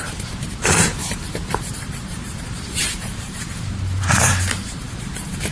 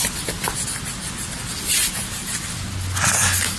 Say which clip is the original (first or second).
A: second